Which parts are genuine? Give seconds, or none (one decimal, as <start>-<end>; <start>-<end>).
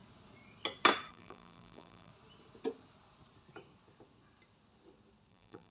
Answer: 0.0-1.1; 2.1-5.3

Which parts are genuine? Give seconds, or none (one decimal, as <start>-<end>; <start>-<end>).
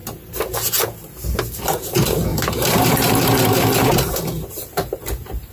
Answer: 0.0-2.3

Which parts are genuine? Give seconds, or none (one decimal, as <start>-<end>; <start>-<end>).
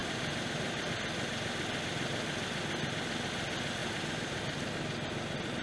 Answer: 0.9-3.8; 4.4-5.6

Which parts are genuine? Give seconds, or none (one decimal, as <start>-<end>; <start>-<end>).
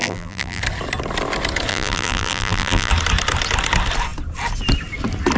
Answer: 0.6-1.7; 2.9-5.4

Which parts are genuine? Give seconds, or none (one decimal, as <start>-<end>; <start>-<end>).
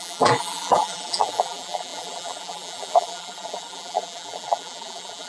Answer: none